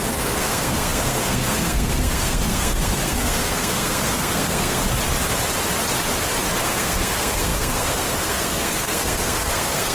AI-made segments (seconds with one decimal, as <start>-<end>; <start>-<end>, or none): 0.0-4.8; 6.6-9.9